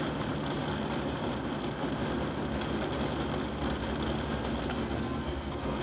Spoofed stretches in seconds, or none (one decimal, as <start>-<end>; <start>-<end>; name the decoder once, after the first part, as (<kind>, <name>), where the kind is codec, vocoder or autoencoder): 4.7-5.8 (codec, SNAC)